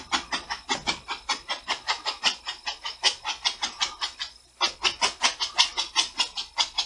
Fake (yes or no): no